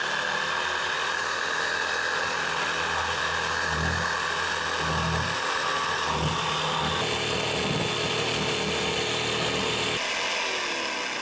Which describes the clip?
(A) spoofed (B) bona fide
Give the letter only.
B